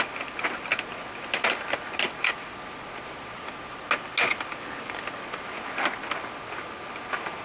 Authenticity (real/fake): real